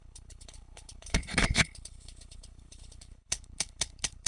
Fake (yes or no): yes